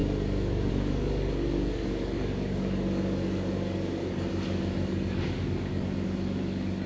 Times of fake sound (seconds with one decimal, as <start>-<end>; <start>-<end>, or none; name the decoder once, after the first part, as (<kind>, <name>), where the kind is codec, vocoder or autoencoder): 0.0-6.9 (codec, DAC)